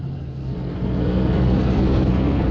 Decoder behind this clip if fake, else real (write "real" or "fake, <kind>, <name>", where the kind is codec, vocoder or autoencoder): fake, codec, SNAC